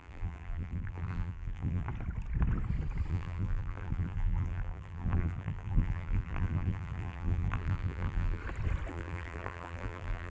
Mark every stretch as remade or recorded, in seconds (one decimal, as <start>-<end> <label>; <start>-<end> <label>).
0.0-1.9 remade; 1.9-3.1 recorded; 3.1-8.4 remade; 8.4-8.9 recorded; 8.9-10.3 remade